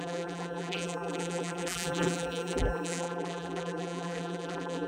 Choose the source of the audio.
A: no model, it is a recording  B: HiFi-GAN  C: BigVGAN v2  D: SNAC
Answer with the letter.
C